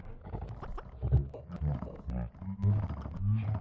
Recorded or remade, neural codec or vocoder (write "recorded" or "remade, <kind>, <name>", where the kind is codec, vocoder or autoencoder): recorded